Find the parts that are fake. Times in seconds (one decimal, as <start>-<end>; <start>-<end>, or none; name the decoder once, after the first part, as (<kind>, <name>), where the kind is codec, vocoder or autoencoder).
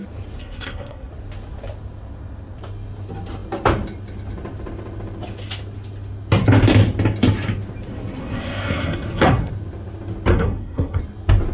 0.4-1.1 (codec, SNAC); 8.2-9.5; 10.3-11.0